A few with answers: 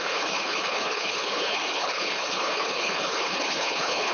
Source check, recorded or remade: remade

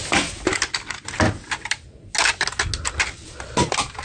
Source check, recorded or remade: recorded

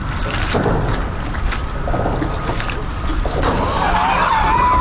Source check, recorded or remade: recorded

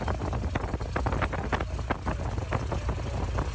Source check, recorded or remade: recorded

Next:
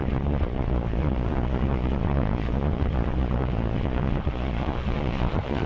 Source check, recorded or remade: remade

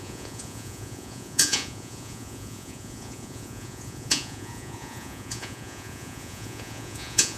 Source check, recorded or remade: remade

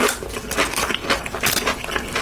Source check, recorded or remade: recorded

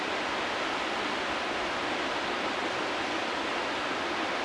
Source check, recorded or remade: recorded